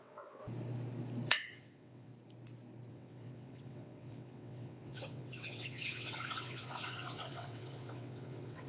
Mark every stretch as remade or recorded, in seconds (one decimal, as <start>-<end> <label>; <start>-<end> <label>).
0.0-0.4 remade; 0.4-1.3 recorded; 1.3-2.1 remade; 2.1-2.9 recorded; 2.9-8.7 remade